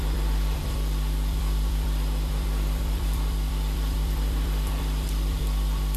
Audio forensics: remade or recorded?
remade